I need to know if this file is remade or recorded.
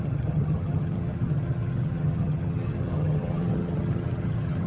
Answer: remade